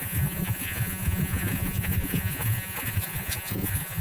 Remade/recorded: remade